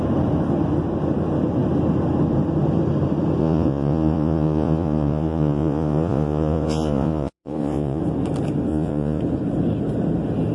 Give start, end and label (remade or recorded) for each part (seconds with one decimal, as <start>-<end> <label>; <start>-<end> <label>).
0.0-3.4 recorded; 3.4-8.0 remade; 8.0-8.7 recorded; 8.7-9.2 remade; 9.2-10.5 recorded